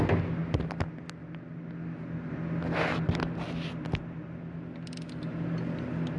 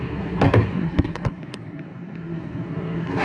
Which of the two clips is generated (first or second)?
second